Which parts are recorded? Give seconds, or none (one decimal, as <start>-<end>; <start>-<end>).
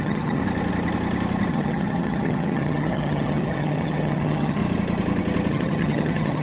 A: 0.4-1.5; 4.6-5.5